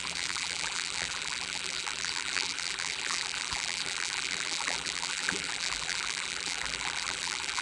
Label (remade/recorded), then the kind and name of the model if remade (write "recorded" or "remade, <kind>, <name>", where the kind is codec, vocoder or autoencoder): remade, vocoder, BigVGAN v2